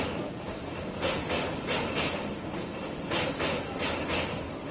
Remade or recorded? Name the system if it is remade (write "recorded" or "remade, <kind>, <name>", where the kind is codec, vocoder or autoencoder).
recorded